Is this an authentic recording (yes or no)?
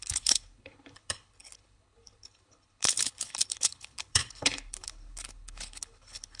no